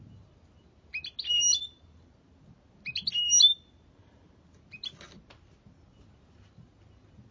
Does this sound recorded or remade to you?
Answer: recorded